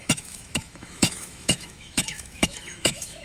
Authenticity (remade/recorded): remade